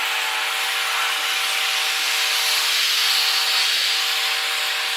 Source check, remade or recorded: recorded